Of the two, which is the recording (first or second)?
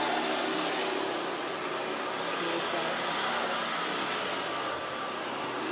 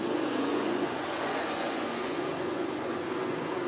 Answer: first